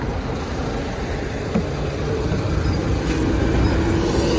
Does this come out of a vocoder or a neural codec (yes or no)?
no